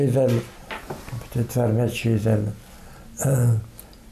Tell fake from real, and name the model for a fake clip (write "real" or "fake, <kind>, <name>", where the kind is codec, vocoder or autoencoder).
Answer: real